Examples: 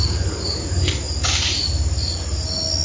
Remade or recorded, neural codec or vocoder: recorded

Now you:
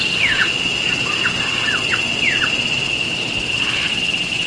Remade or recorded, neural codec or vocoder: recorded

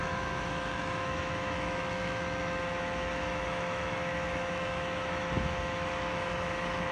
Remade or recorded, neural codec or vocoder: remade, autoencoder, DAC-VAE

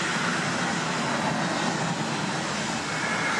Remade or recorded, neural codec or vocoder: recorded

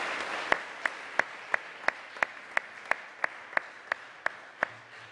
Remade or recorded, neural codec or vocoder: recorded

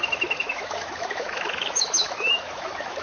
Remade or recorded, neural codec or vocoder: remade, autoencoder, DAC-VAE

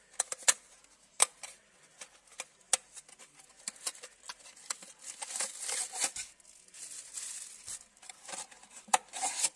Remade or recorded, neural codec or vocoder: recorded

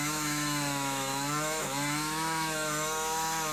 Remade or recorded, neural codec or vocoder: remade, autoencoder, DAC-VAE